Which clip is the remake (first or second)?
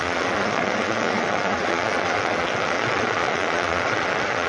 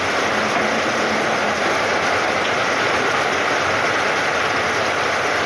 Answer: first